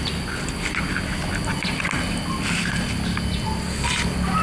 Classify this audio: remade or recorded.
recorded